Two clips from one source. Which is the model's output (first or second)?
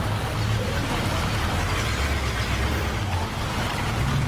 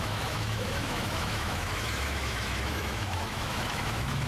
second